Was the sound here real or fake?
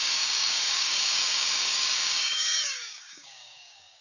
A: fake